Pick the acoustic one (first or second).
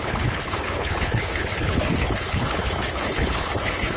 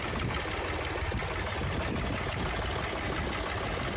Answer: second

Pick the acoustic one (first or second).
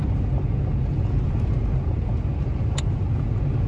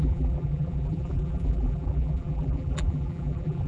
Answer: first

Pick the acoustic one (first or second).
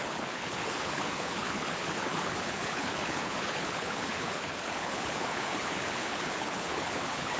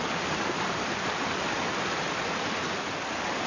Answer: second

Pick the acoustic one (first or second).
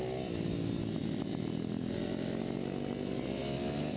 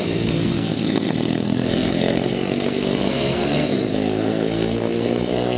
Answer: first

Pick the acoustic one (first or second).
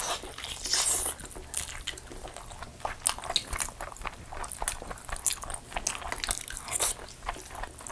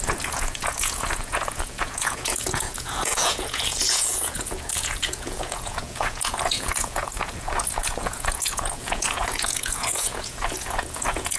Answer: first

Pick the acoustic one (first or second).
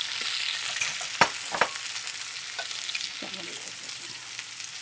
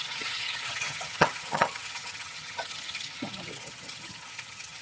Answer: first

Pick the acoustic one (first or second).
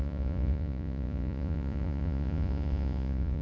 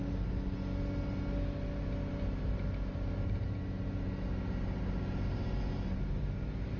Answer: second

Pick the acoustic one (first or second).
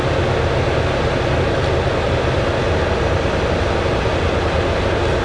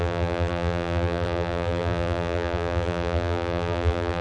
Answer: first